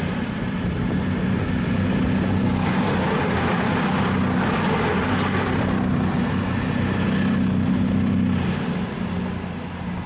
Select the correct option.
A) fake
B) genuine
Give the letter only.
B